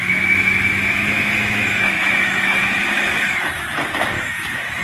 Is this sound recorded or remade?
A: remade